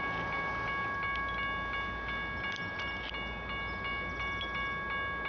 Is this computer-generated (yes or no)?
no